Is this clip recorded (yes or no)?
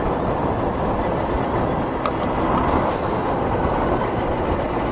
yes